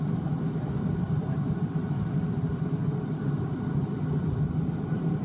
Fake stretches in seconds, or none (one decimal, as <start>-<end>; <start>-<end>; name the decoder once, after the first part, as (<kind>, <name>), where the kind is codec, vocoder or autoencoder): 0.0-5.2 (vocoder, BigVGAN v2)